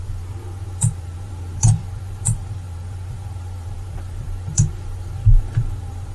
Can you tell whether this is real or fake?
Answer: fake